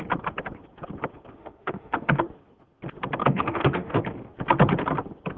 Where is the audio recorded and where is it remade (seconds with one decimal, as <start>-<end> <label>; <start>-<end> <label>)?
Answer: 0.0-1.4 recorded; 1.4-2.2 remade; 2.2-3.2 recorded; 3.2-4.0 remade; 4.0-5.4 recorded